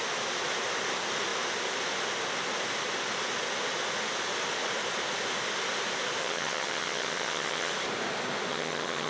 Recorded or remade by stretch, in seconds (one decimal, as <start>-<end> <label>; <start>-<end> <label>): 0.0-6.2 recorded; 6.2-7.7 remade; 7.7-8.5 recorded; 8.5-9.1 remade